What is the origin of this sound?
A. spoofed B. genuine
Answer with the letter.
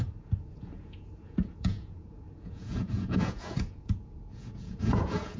A